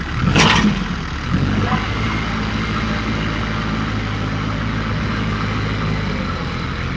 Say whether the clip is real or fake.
real